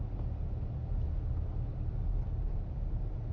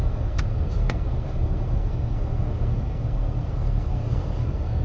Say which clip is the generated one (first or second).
second